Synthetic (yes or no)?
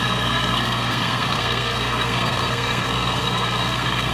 yes